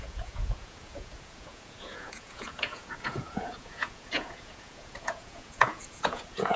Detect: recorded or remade remade